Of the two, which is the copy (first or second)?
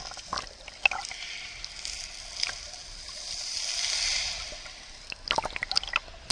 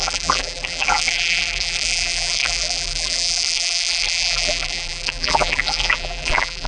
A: second